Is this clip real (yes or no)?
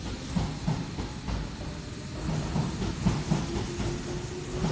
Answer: yes